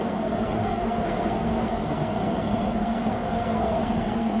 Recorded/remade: remade